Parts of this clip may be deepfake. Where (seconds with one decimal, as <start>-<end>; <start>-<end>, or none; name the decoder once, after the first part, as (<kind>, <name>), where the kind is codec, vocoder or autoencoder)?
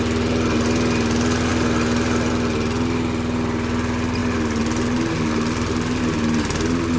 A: none